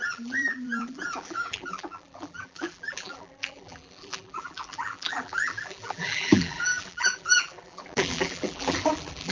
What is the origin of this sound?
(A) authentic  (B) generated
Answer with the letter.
B